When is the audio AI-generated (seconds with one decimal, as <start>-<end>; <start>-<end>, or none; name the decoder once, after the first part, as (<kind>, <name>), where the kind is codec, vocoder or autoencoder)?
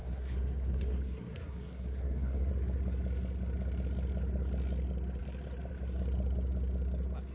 0.0-2.5 (codec, SNAC)